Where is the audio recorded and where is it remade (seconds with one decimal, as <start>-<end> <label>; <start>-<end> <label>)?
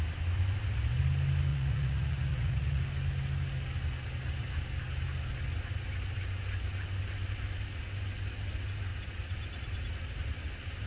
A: 0.0-1.5 recorded; 1.5-2.8 remade; 2.8-10.9 recorded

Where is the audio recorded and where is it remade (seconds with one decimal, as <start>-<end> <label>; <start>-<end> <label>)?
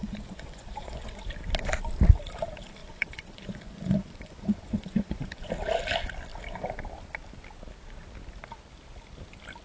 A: 0.0-1.2 remade; 1.2-2.8 recorded; 2.8-5.5 remade; 5.5-9.6 recorded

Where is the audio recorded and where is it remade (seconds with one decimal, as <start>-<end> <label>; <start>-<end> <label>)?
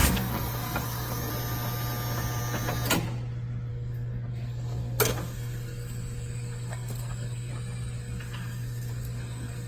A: 0.0-1.3 remade; 1.3-3.7 recorded; 3.7-7.5 remade; 7.5-8.0 recorded; 8.0-9.7 remade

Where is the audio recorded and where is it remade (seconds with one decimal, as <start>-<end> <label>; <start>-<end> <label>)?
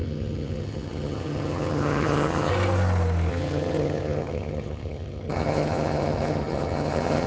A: 0.0-2.5 remade; 2.5-3.3 recorded; 3.3-7.3 remade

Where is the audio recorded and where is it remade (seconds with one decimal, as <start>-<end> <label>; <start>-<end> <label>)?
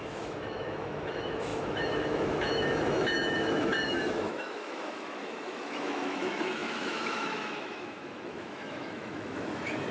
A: 0.0-9.9 remade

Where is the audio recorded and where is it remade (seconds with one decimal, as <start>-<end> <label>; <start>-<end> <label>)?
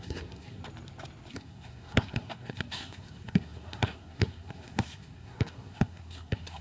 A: 0.0-0.6 remade; 0.6-1.3 recorded; 1.3-6.6 remade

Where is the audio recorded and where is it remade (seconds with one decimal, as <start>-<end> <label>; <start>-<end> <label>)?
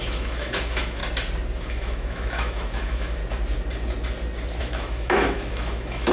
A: 0.0-1.0 remade; 1.0-1.6 recorded; 1.6-3.2 remade; 3.2-4.6 recorded; 4.6-6.1 remade